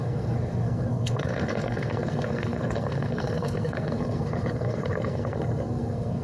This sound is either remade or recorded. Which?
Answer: remade